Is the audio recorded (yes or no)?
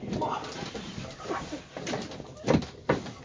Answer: yes